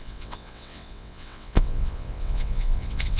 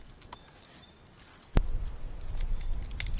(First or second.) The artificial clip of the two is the first